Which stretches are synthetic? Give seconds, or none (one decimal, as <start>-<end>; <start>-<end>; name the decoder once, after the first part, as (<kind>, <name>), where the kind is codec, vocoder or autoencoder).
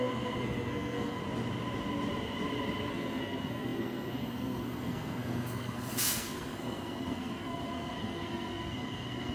0.0-1.2 (codec, SNAC); 2.9-9.3